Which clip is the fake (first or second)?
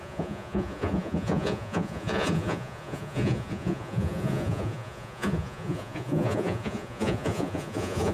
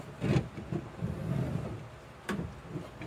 first